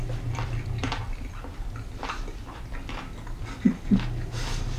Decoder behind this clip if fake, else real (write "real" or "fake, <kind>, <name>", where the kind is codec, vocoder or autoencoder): real